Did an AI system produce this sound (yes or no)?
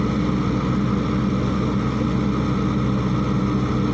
no